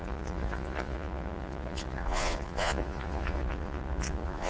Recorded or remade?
remade